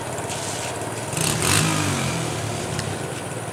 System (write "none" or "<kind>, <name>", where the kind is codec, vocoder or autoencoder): none